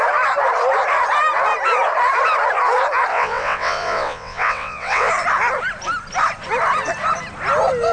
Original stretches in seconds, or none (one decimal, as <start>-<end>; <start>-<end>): 0.0-3.1; 5.1-7.9